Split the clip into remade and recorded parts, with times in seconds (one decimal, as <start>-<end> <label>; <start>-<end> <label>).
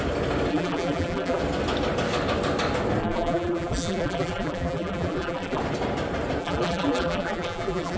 0.0-0.5 recorded; 0.5-1.4 remade; 1.4-3.0 recorded; 3.0-5.6 remade; 5.6-6.4 recorded; 6.4-8.0 remade